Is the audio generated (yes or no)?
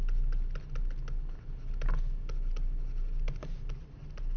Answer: no